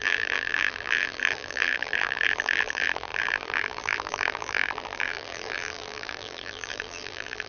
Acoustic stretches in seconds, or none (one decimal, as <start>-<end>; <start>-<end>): none